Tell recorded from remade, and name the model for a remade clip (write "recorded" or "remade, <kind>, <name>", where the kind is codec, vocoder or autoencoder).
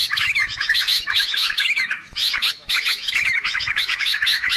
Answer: remade, autoencoder, DAC-VAE